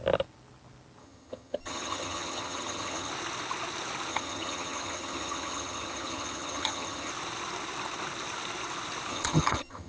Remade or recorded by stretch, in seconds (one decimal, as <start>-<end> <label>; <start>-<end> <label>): 0.0-1.0 recorded; 1.0-3.1 remade; 3.1-4.1 recorded; 4.1-7.1 remade; 7.1-9.1 recorded; 9.1-9.9 remade